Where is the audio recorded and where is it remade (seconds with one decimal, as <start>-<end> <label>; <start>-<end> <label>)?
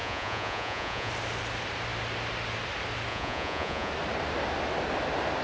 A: 0.0-1.1 remade; 1.1-3.1 recorded; 3.1-3.9 remade; 3.9-5.4 recorded